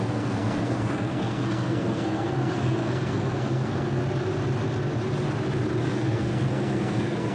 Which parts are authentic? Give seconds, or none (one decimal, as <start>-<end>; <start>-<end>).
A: 4.0-5.8